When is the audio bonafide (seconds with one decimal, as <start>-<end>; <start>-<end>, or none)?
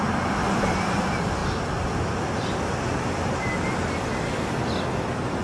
0.0-5.4